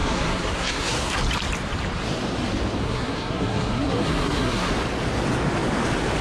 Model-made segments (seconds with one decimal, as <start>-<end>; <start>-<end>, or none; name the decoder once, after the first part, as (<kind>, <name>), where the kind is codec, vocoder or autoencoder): 0.0-1.2 (codec, SNAC); 2.8-4.7